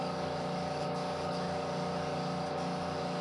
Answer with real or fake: fake